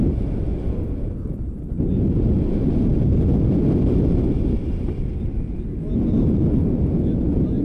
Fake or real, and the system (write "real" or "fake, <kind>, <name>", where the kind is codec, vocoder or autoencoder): real